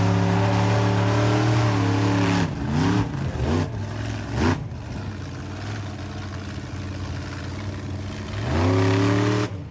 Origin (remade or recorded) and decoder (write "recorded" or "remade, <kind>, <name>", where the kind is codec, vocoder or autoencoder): recorded